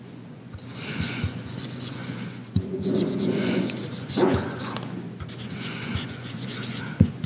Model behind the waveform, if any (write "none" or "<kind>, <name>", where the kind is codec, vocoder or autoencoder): vocoder, Vocos